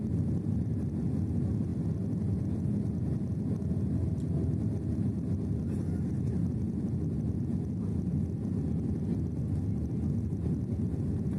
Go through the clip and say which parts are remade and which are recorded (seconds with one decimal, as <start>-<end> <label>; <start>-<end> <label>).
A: 0.0-11.4 recorded